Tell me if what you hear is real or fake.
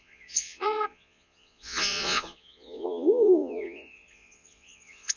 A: fake